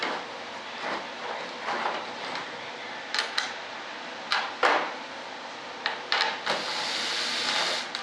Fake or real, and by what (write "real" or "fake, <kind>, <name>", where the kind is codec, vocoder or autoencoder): real